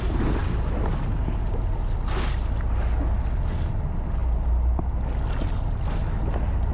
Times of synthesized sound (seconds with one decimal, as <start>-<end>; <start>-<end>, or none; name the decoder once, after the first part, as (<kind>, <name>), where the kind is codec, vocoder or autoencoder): none